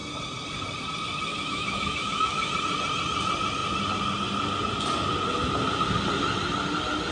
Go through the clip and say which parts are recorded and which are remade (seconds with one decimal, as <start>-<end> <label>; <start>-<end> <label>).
0.0-1.3 recorded; 1.3-2.5 remade; 2.5-7.1 recorded